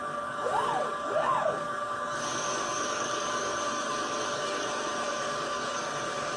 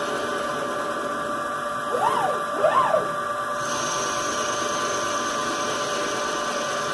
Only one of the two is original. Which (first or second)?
second